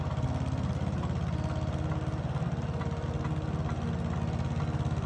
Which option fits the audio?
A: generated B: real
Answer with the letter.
B